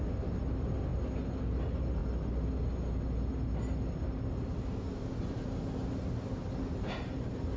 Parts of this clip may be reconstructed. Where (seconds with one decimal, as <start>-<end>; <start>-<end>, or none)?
none